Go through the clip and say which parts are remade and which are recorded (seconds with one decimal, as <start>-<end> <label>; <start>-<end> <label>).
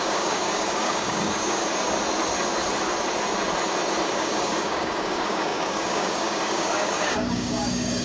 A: 0.0-1.6 remade; 1.6-4.1 recorded; 4.1-8.0 remade